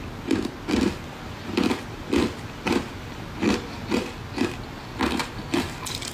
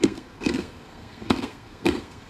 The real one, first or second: first